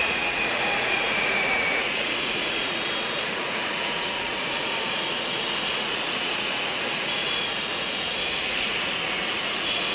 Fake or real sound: fake